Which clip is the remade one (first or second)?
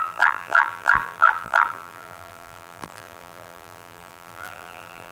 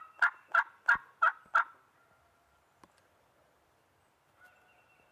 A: first